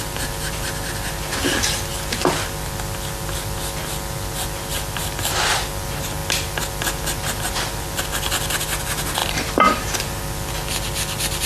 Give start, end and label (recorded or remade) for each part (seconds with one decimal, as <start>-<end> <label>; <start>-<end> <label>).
0.0-9.2 recorded; 9.2-10.2 remade; 10.2-11.5 recorded